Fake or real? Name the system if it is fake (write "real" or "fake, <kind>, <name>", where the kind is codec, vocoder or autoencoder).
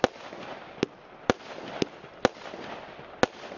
real